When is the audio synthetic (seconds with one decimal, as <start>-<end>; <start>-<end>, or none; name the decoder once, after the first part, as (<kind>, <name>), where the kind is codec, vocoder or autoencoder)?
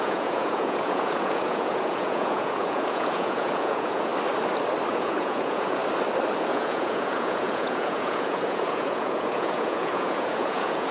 0.0-4.1 (vocoder, Vocos); 4.9-5.8; 6.4-10.9